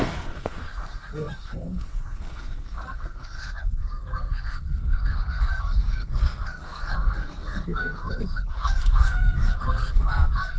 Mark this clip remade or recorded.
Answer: remade